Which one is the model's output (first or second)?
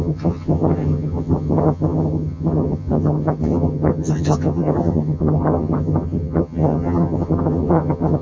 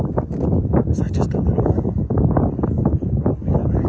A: first